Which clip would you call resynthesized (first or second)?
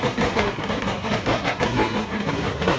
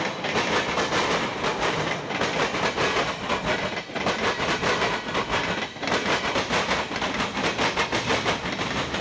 first